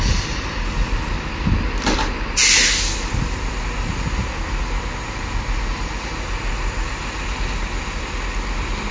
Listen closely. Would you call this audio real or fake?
real